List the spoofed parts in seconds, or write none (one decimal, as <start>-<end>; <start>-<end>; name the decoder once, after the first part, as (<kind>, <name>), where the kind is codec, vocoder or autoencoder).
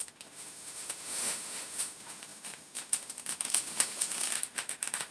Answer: 0.0-5.1 (autoencoder, DAC-VAE)